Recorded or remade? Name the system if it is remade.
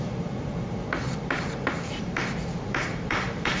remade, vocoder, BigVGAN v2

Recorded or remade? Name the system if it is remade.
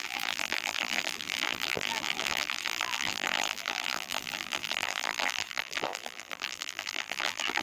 remade, vocoder, BigVGAN v2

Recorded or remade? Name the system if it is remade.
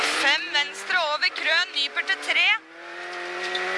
recorded